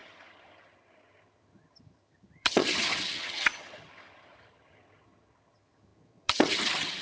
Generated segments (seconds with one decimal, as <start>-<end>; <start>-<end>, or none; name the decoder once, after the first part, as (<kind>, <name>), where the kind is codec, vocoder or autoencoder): 0.0-7.0 (vocoder, HiFi-GAN)